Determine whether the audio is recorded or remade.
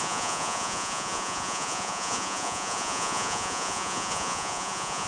remade